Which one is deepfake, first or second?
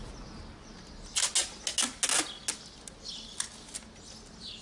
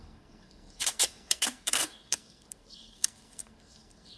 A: second